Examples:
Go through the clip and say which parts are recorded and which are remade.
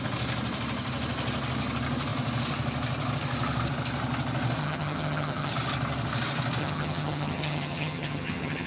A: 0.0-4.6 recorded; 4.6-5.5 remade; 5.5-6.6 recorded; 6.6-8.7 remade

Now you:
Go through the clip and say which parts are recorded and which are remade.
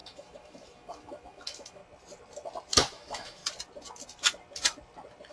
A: 0.0-1.8 remade; 1.8-2.9 recorded; 2.9-3.4 remade; 3.4-5.3 recorded